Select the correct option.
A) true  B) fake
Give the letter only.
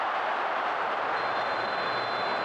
A